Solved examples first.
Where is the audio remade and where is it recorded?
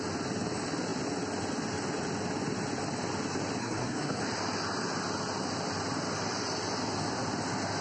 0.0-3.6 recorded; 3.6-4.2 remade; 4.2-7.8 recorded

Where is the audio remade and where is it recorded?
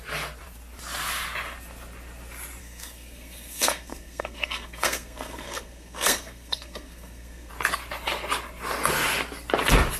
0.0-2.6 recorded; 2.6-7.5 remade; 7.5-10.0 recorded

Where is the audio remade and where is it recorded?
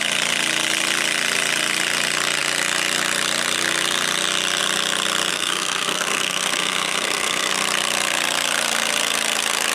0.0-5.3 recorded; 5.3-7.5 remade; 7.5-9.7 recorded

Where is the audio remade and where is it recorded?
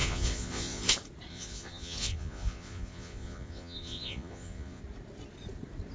0.0-0.9 remade; 0.9-1.3 recorded; 1.3-4.8 remade; 4.8-5.9 recorded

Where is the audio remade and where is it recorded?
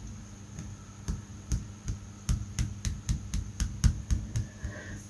0.0-5.1 recorded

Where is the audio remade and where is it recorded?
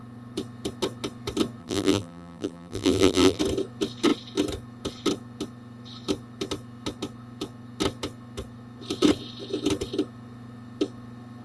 0.0-1.6 recorded; 1.6-3.4 remade; 3.4-11.4 recorded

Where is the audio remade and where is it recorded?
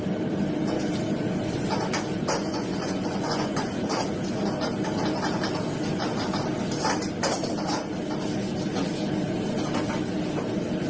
0.0-2.5 recorded; 2.5-3.9 remade; 3.9-10.9 recorded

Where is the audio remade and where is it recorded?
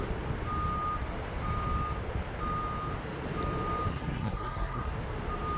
0.0-3.9 recorded; 3.9-4.9 remade; 4.9-5.6 recorded